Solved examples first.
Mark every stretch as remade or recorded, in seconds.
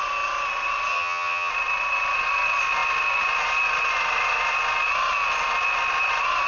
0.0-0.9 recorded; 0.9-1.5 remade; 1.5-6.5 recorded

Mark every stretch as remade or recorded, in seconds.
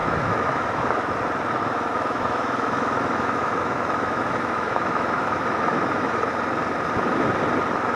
0.0-1.1 remade; 1.1-1.6 recorded; 1.6-6.3 remade; 6.3-8.0 recorded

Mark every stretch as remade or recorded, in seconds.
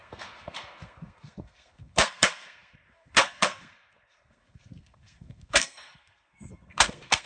0.0-7.3 remade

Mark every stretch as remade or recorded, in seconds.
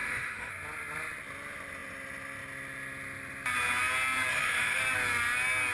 0.0-0.5 remade; 0.5-4.3 recorded; 4.3-4.8 remade; 4.8-5.7 recorded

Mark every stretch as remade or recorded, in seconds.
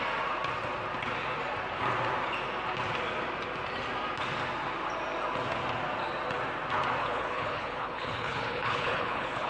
0.0-7.0 recorded; 7.0-9.5 remade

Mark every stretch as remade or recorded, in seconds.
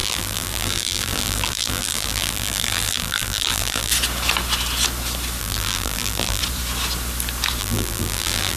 0.0-3.9 remade; 3.9-5.4 recorded; 5.4-6.4 remade; 6.4-7.6 recorded; 7.6-8.6 remade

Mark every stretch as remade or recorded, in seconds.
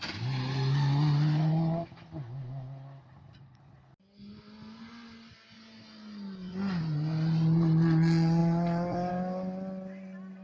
0.0-10.4 recorded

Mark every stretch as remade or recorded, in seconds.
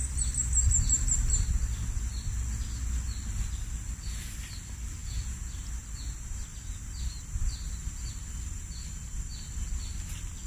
0.0-5.0 recorded; 5.0-5.5 remade; 5.5-10.5 recorded